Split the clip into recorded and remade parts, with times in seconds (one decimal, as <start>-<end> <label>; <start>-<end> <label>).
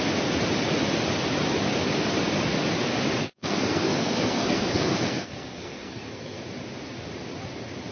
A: 0.0-3.2 recorded; 3.2-6.4 remade; 6.4-7.9 recorded